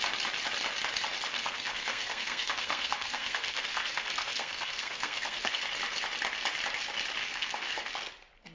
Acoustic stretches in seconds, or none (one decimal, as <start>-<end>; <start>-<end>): 0.0-1.3; 5.6-7.2; 7.9-8.5